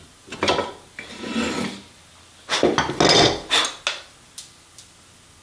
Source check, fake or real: real